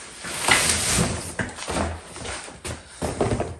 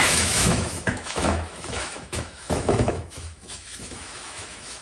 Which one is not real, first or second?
second